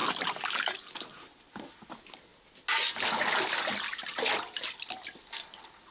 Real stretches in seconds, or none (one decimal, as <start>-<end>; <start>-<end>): 0.9-5.9